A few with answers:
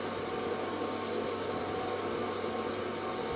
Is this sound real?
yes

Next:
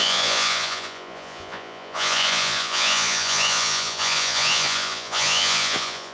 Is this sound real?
no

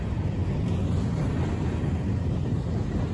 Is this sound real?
yes